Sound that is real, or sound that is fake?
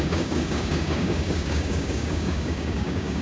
fake